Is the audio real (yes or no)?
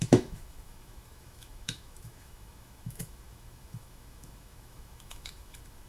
no